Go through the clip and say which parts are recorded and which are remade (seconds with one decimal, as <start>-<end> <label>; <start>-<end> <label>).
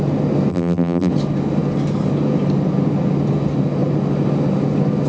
0.0-0.5 recorded; 0.5-1.1 remade; 1.1-5.1 recorded